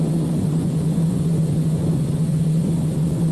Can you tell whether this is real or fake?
fake